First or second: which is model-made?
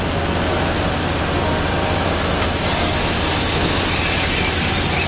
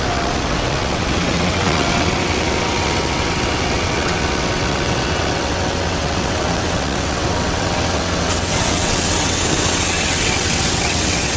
second